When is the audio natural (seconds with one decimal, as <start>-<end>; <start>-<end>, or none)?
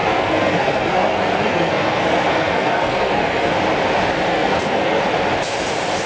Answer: 3.5-4.3; 5.0-6.1